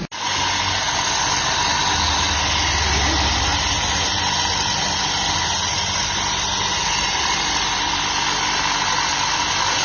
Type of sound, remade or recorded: recorded